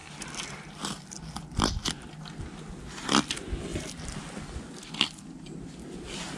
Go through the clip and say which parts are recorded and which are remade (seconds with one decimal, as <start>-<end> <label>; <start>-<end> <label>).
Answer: 0.0-6.4 recorded